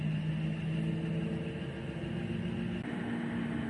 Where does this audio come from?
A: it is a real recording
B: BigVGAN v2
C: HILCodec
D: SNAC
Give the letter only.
A